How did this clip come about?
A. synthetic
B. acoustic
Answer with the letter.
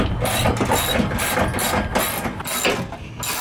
B